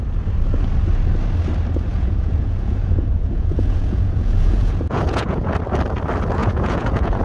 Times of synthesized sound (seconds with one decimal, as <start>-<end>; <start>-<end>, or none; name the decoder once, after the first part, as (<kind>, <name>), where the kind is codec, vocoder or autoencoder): 1.9-5.5 (vocoder, Vocos); 6.4-7.2

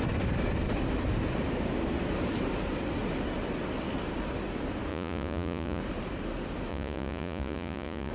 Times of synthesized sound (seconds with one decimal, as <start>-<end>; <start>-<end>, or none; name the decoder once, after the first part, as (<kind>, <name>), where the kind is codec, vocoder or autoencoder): 4.9-5.8 (vocoder, Vocos); 6.7-8.1

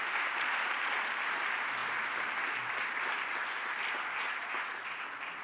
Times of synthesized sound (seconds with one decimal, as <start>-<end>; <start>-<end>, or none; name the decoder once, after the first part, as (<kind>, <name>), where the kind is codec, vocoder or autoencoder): none

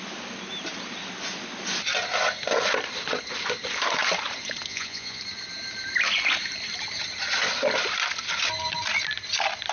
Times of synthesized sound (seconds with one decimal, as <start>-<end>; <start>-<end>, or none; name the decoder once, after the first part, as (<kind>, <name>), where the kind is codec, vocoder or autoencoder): 4.7-5.2 (vocoder, Vocos)

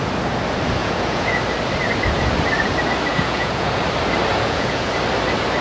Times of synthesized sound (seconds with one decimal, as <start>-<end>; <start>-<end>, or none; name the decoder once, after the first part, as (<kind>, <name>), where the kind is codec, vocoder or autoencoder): 0.8-1.4 (vocoder, Vocos); 3.1-3.8; 4.3-4.9

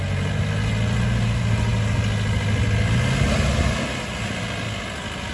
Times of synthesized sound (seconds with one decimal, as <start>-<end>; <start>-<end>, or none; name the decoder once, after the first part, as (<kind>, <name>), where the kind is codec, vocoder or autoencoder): none

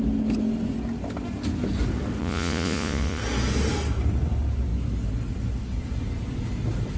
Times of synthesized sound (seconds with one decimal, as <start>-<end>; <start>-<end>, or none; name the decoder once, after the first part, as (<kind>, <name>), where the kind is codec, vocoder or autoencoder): 2.2-3.2 (vocoder, Vocos)